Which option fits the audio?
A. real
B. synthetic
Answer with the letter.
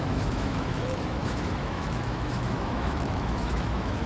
B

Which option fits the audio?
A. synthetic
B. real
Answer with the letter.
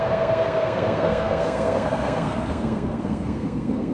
A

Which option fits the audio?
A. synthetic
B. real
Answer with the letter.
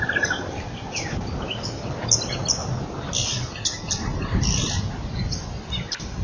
B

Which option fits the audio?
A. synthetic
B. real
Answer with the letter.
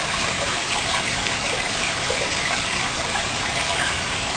A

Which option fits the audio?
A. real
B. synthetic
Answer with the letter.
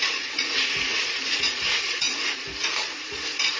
B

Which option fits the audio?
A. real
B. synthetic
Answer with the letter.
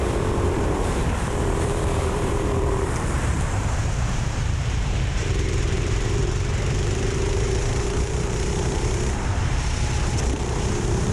B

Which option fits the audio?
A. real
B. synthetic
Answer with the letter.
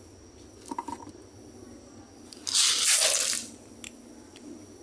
A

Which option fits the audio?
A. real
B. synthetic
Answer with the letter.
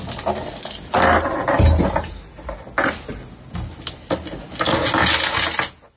A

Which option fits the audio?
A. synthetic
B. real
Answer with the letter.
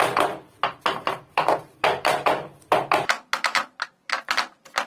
B